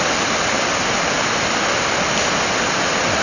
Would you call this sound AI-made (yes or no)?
no